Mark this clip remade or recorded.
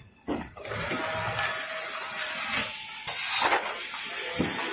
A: recorded